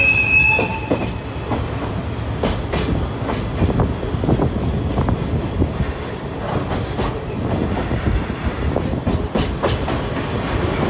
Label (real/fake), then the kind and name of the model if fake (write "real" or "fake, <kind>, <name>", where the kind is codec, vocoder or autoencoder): real